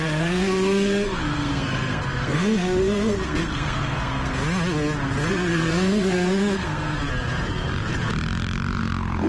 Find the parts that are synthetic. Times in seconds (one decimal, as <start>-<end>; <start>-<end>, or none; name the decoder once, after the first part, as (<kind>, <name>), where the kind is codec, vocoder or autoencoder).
0.0-4.4 (codec, SNAC); 5.3-7.0; 8.8-9.3